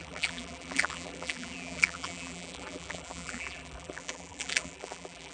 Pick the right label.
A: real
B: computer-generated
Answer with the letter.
B